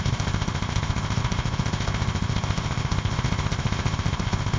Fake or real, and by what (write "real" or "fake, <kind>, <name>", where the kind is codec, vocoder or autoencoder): fake, codec, ZipCodec